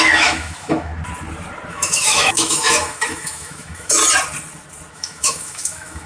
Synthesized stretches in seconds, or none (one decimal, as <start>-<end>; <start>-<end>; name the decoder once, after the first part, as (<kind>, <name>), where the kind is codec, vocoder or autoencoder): 0.0-0.9 (autoencoder, DAC-VAE); 1.7-4.0; 4.9-6.1